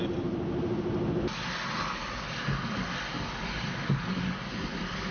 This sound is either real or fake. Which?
real